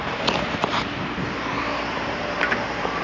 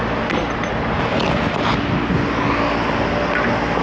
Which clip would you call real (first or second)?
second